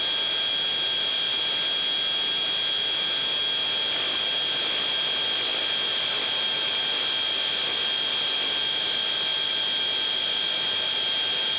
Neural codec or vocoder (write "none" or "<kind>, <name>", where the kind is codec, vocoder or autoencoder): none